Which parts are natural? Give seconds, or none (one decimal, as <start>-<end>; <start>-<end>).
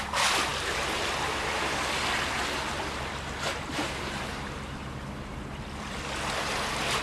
0.0-7.0